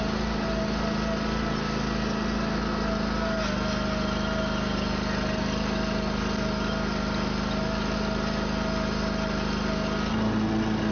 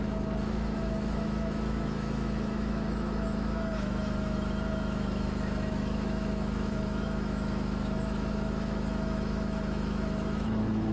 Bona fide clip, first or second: first